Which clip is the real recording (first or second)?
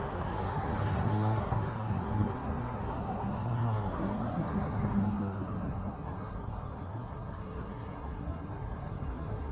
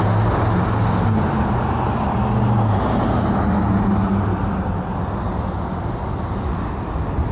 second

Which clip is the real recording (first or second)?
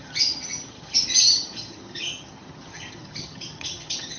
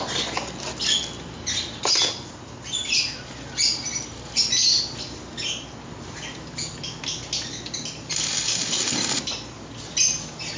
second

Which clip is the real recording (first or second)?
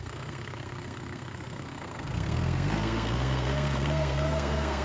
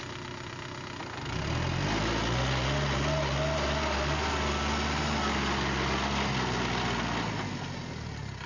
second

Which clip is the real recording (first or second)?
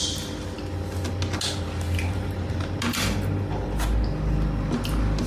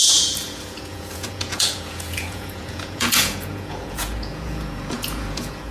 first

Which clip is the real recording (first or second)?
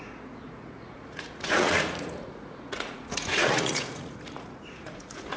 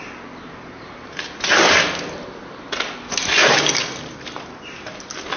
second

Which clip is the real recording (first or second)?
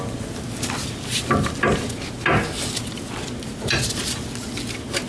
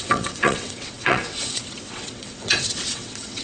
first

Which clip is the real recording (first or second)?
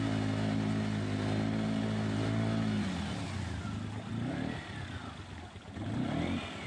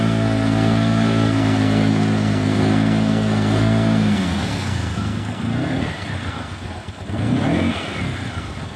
first